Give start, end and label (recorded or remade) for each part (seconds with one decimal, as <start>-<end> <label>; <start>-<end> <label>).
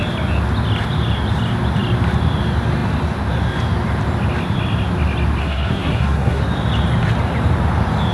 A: 0.0-5.4 recorded; 5.4-6.4 remade; 6.4-8.1 recorded